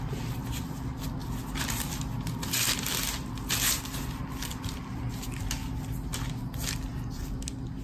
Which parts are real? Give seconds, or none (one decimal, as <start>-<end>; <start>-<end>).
0.0-7.8